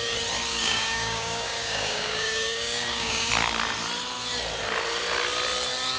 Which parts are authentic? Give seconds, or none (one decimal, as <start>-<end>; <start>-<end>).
0.0-0.5; 3.3-6.0